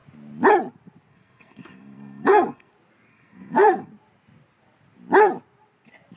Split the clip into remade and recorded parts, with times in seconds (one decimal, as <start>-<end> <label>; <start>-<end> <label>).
0.0-1.1 recorded; 1.1-2.7 remade; 2.7-3.1 recorded; 3.1-3.9 remade; 3.9-6.2 recorded